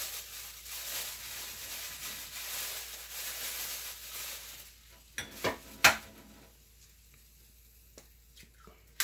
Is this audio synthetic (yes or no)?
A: no